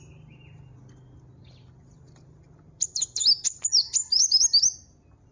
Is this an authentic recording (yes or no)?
yes